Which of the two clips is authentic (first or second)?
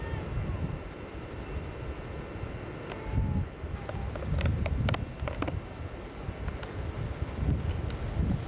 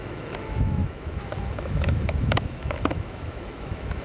first